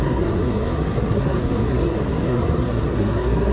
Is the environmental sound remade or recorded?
remade